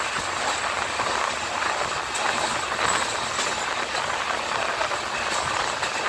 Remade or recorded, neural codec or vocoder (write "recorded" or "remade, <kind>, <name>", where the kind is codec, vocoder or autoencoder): recorded